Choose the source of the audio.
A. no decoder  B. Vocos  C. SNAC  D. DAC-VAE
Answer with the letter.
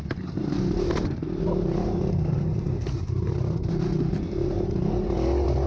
A